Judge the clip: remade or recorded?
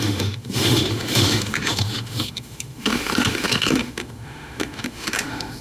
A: remade